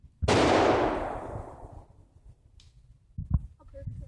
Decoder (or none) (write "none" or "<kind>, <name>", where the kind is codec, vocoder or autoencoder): none